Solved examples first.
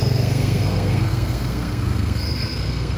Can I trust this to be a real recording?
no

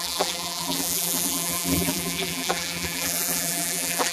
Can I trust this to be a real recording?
no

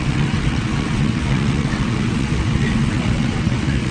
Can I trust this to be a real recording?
no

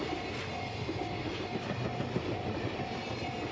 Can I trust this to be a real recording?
yes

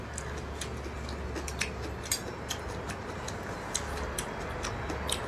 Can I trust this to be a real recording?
yes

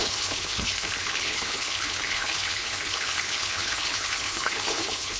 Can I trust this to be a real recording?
no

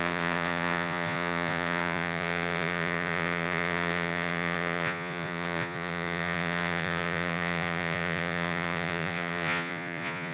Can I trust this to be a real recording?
no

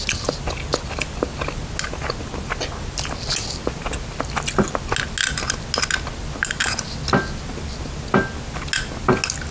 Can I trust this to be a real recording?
yes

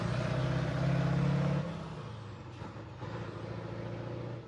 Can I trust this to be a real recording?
yes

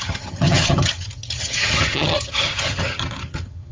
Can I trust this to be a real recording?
no